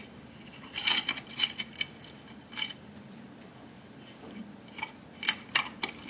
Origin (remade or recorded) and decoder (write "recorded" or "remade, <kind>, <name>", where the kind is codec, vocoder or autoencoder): recorded